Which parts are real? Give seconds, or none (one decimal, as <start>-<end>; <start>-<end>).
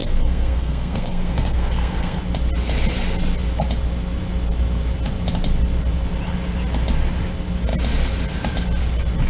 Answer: 2.2-9.3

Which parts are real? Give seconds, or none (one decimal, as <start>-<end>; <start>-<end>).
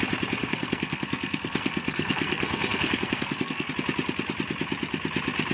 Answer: 0.0-0.4; 3.7-5.5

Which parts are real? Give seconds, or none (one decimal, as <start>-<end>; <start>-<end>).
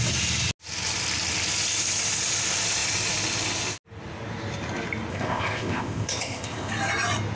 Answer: 0.0-5.1; 6.7-7.3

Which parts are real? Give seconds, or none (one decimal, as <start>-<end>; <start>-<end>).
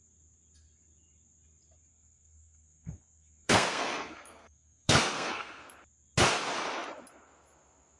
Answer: 0.0-1.9; 5.6-8.0